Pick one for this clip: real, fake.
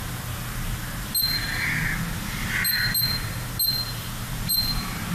real